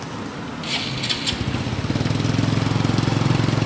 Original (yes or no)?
yes